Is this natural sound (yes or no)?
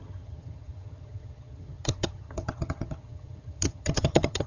no